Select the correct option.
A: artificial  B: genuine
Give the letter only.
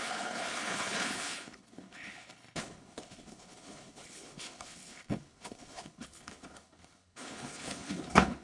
A